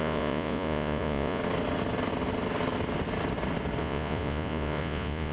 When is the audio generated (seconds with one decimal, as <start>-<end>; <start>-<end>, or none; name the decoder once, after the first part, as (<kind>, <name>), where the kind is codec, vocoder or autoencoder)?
0.0-1.4 (vocoder, Vocos); 3.8-5.3